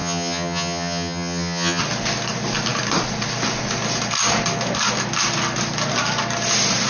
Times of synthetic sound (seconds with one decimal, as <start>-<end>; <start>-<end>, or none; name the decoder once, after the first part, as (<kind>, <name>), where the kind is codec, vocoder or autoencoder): 0.0-1.8 (vocoder, HiFi-GAN)